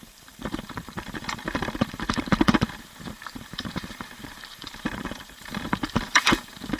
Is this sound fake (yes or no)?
yes